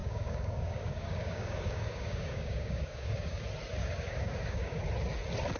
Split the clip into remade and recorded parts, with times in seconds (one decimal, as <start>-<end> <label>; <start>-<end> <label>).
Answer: 0.0-3.4 remade; 3.4-3.8 recorded; 3.8-4.8 remade; 4.8-5.6 recorded